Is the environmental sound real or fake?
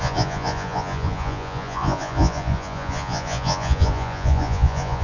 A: fake